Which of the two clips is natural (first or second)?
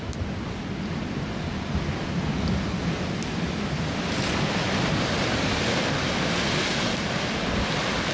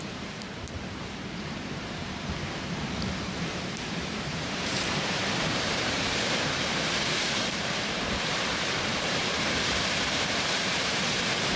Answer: first